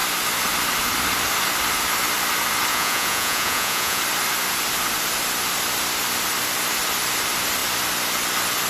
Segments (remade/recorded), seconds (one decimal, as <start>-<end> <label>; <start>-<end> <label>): 0.0-2.7 recorded; 2.7-4.0 remade; 4.0-8.7 recorded

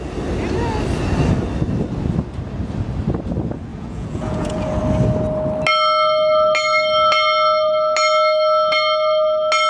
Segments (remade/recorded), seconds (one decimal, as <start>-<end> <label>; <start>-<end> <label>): 0.0-3.7 recorded; 3.7-4.8 remade; 4.8-9.7 recorded